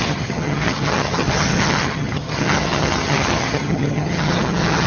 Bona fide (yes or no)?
no